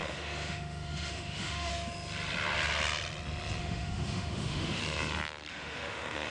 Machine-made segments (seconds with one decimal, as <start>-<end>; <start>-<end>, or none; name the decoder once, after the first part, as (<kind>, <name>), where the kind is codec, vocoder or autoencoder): 0.0-1.7 (autoencoder, DAC-VAE); 3.6-4.8; 5.5-6.3